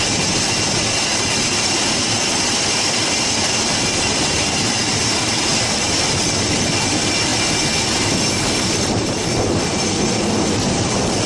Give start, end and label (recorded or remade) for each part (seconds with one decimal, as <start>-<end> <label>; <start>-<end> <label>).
0.0-7.3 remade; 7.3-8.1 recorded; 8.1-11.3 remade